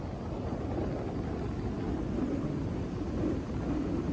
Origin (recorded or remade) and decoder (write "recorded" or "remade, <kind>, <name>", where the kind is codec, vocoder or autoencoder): recorded